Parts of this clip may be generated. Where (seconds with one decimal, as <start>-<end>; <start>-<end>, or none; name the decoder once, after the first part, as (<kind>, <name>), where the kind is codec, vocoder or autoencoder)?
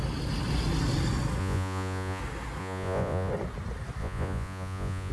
1.4-2.2 (vocoder, Vocos); 2.6-3.3; 4.0-5.1